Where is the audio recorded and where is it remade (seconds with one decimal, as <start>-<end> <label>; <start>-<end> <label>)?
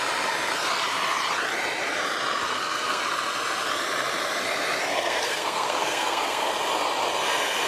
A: 0.0-2.5 recorded; 2.5-3.0 remade; 3.0-4.9 recorded; 4.9-6.5 remade; 6.5-7.7 recorded